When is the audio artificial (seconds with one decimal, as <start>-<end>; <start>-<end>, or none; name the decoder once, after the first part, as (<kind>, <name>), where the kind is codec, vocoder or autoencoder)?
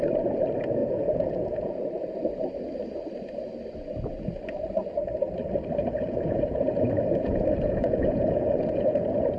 0.8-1.8 (vocoder, Vocos); 5.8-9.0